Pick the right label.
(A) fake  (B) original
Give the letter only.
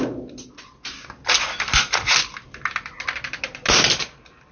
B